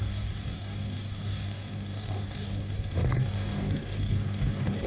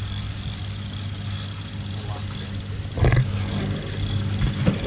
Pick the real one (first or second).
second